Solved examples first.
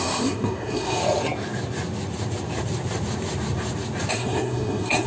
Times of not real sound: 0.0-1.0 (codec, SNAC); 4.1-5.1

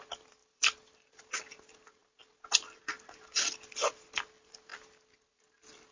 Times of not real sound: 0.4-1.2 (vocoder, BigVGAN v2)

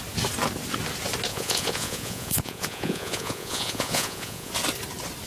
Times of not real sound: 1.3-4.5 (vocoder, Vocos)

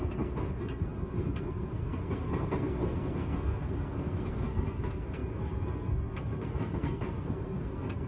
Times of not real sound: 0.0-8.1 (codec, SNAC)